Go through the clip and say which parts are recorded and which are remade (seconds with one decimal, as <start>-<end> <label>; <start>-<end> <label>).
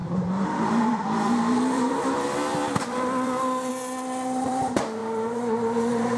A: 0.0-6.2 remade